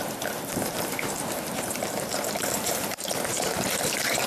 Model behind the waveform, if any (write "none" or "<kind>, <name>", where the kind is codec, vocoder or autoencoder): vocoder, BigVGAN v2